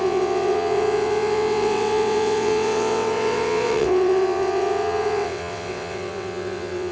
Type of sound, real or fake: fake